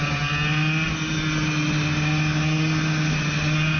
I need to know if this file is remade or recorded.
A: recorded